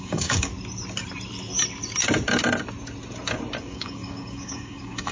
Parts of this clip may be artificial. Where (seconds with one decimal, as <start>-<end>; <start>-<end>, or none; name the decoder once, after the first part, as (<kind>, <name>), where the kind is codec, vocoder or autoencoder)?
0.0-0.5 (codec, DAC); 3.6-5.1